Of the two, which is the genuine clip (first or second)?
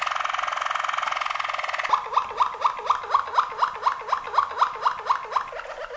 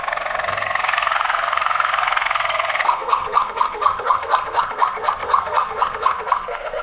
first